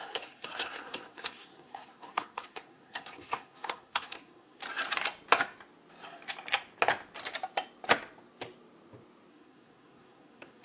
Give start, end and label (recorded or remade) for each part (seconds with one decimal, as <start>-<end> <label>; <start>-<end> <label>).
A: 0.0-4.6 remade; 4.6-9.3 recorded; 9.3-10.6 remade